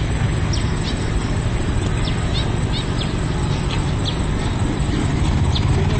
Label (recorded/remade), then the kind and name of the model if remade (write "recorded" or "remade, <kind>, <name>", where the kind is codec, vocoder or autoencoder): recorded